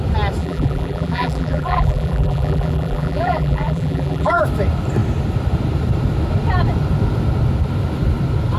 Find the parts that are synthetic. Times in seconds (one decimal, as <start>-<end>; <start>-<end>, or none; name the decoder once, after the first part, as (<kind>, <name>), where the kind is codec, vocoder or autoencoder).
0.4-4.4 (vocoder, BigVGAN v2)